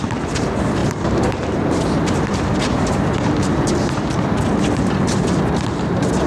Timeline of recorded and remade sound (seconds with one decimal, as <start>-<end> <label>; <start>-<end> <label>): 0.0-0.8 recorded; 0.8-4.4 remade; 4.4-6.3 recorded